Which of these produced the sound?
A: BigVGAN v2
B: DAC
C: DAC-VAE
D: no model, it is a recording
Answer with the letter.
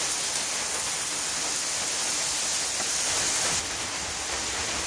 D